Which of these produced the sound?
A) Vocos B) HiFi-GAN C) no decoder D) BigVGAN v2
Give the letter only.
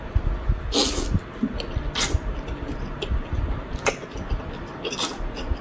C